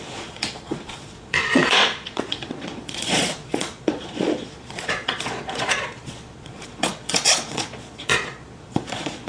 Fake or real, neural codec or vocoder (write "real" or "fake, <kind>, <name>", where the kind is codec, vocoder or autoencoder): fake, vocoder, Vocos